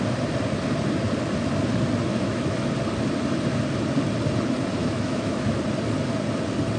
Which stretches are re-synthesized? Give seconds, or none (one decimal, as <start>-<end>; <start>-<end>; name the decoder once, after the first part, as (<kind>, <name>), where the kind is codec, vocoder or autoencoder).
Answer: 2.1-2.7 (autoencoder, DAC-VAE); 4.8-5.6